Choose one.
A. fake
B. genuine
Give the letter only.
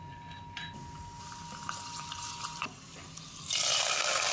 B